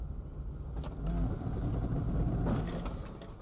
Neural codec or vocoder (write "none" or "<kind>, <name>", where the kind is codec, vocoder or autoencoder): none